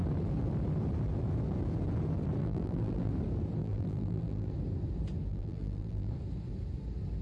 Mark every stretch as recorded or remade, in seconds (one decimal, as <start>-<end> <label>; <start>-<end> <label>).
0.0-2.4 recorded; 2.4-3.1 remade; 3.1-3.6 recorded; 3.6-4.5 remade; 4.5-5.3 recorded; 5.3-6.1 remade; 6.1-7.2 recorded